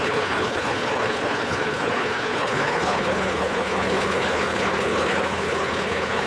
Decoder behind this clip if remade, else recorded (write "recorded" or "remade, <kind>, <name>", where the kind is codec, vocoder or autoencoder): remade, codec, HILCodec